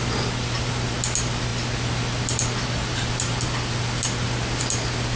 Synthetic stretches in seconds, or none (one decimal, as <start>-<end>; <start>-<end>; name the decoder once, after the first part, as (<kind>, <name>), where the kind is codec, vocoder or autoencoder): none